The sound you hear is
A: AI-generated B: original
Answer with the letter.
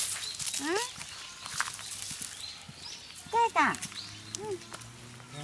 B